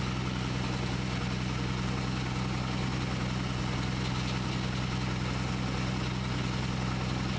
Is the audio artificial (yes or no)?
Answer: no